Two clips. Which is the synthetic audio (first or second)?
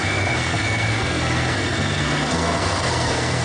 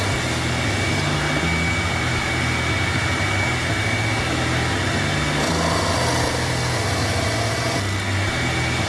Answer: first